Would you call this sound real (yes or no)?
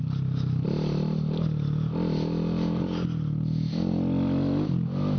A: yes